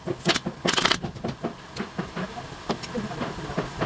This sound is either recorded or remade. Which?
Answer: recorded